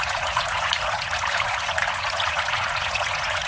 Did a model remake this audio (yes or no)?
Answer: yes